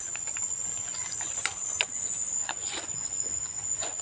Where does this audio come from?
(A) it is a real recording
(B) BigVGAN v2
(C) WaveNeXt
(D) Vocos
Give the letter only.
D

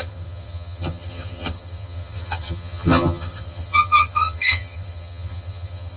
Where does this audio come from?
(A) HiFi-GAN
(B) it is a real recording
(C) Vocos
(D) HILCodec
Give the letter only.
A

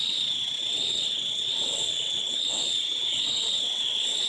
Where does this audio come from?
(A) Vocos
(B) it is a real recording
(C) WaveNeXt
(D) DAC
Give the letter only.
C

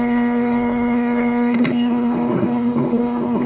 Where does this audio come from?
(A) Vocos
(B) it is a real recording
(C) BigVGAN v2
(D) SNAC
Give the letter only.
D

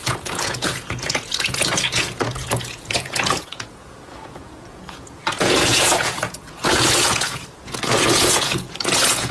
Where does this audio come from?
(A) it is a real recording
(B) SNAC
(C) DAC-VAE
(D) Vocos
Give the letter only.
D